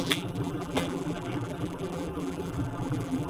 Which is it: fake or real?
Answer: fake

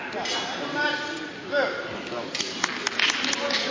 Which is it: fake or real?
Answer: real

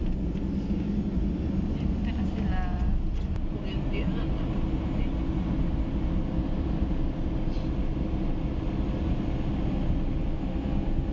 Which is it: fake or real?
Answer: real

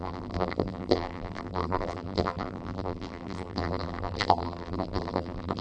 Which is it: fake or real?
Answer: fake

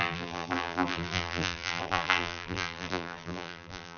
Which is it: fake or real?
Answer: fake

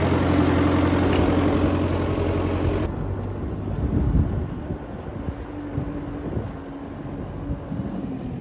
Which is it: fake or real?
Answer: real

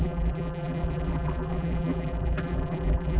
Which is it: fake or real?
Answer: fake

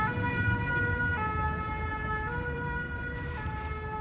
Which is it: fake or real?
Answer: fake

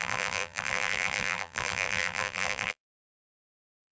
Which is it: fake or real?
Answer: fake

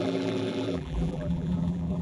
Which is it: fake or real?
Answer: fake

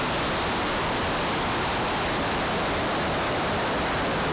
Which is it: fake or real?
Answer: fake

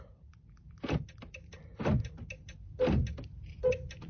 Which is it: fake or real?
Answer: real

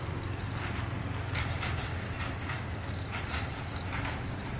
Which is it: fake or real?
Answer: real